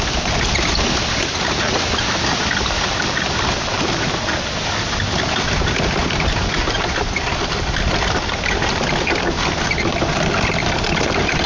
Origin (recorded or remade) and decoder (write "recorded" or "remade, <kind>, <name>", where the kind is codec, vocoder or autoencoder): recorded